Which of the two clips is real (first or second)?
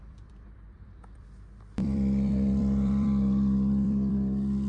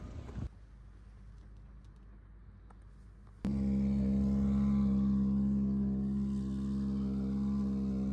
second